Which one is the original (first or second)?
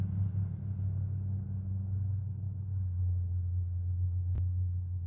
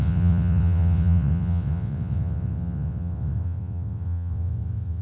first